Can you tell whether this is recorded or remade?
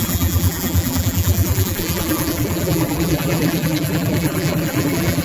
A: remade